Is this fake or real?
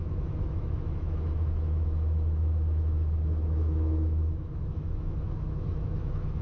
fake